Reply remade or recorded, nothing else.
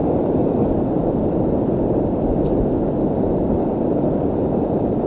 recorded